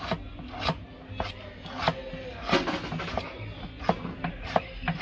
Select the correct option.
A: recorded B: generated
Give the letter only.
A